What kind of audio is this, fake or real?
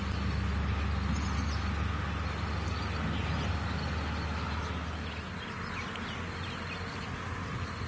real